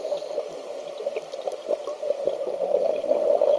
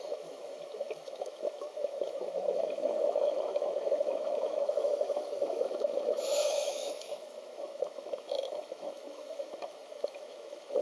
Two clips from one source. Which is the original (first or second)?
first